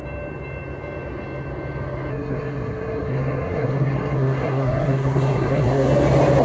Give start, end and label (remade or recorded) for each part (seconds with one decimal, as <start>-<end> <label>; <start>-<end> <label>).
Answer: 0.0-2.1 recorded; 2.1-5.9 remade; 5.9-6.4 recorded